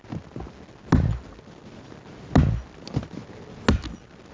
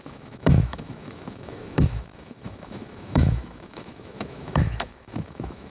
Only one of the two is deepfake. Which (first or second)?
second